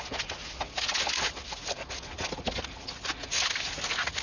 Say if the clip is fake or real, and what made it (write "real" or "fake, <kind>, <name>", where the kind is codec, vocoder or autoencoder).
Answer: real